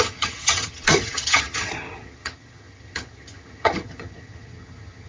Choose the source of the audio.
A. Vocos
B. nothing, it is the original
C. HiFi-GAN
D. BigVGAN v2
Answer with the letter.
C